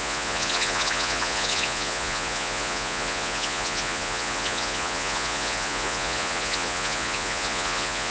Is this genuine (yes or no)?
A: no